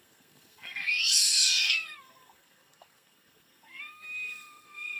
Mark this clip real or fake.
fake